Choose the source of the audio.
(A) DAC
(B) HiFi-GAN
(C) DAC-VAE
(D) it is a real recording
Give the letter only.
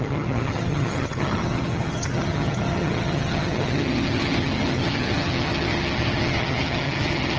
B